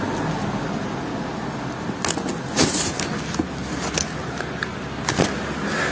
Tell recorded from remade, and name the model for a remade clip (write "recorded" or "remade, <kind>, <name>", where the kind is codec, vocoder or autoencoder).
recorded